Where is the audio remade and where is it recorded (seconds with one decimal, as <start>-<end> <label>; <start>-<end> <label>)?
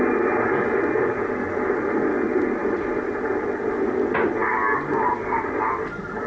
0.0-6.3 recorded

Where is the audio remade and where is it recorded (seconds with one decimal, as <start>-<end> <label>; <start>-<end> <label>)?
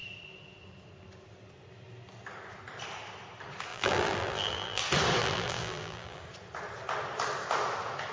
0.0-3.7 recorded; 3.7-4.8 remade; 4.8-5.2 recorded; 5.2-6.2 remade; 6.2-8.1 recorded